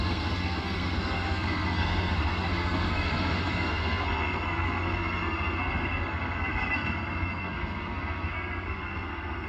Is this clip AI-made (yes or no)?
yes